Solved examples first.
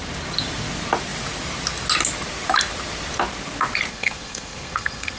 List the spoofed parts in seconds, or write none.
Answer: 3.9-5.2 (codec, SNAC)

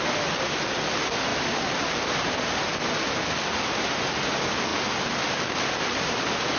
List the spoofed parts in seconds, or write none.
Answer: none

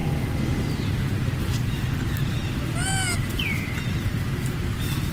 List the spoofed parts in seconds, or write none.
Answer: none

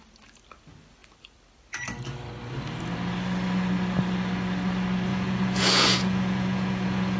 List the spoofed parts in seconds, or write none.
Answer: 5.1-7.2 (vocoder, Vocos)

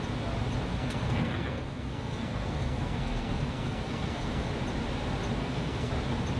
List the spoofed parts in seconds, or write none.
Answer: 0.7-4.5 (codec, SNAC); 5.4-5.9

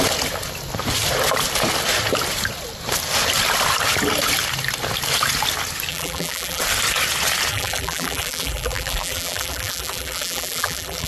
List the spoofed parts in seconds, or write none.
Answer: 5.9-6.6 (vocoder, BigVGAN v2); 7.5-11.1

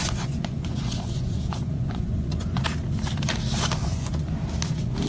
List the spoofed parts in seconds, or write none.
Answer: 0.0-2.6 (vocoder, Vocos); 3.8-4.3

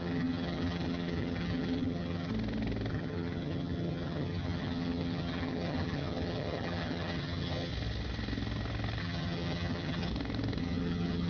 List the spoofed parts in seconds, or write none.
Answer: 0.0-2.3 (vocoder, HiFi-GAN); 2.9-7.7; 9.0-10.1; 10.6-11.3